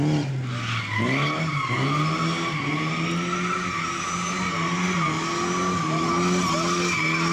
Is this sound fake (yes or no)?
no